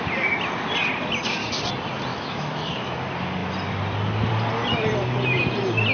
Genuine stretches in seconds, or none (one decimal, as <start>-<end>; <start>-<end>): 0.0-2.1; 3.0-5.9